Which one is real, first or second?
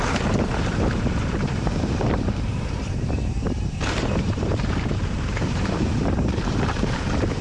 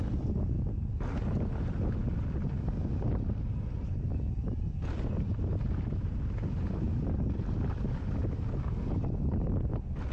second